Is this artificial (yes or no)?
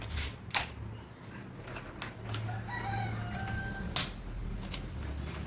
no